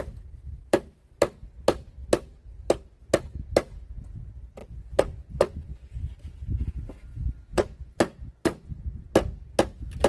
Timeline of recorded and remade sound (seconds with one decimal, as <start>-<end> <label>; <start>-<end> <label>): 0.0-4.6 recorded; 4.6-6.0 remade; 6.0-7.5 recorded; 7.5-9.0 remade; 9.0-10.1 recorded

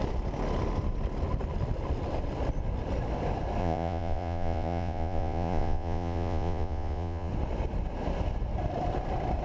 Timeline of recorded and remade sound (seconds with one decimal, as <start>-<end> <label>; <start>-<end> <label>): 0.0-3.6 recorded; 3.6-7.3 remade; 7.3-9.4 recorded

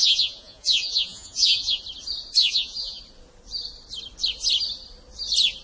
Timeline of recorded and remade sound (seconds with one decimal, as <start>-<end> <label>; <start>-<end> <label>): 0.0-1.8 remade; 1.8-2.4 recorded; 2.4-3.0 remade; 3.0-5.6 recorded